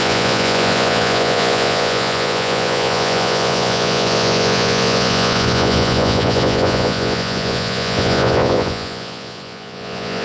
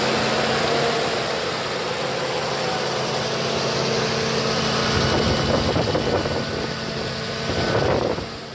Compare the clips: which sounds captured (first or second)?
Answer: second